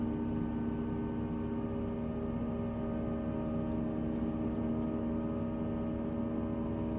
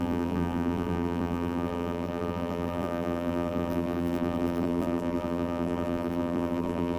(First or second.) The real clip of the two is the first